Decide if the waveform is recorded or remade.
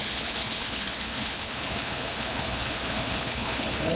remade